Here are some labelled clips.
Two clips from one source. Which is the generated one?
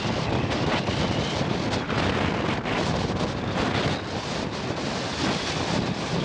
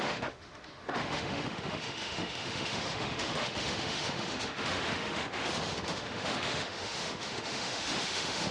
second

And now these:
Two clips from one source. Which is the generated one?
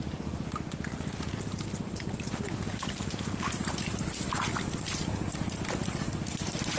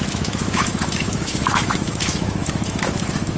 second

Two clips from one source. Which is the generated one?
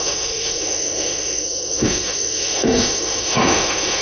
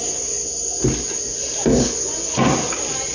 first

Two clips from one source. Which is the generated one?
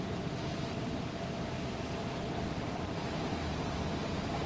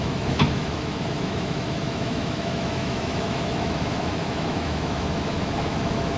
second